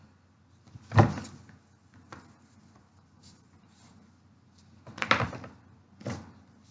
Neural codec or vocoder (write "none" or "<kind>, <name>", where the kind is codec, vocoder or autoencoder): none